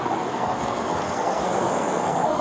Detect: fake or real fake